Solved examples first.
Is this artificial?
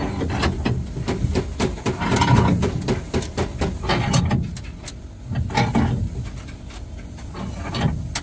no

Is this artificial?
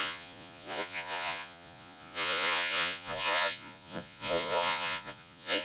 yes